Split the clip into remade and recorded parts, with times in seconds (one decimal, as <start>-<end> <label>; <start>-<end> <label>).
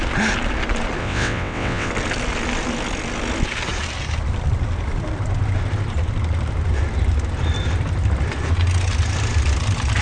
0.0-1.0 recorded; 1.0-1.9 remade; 1.9-10.0 recorded